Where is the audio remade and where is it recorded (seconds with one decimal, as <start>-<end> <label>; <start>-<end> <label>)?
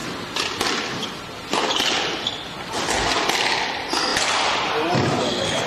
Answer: 0.0-5.7 recorded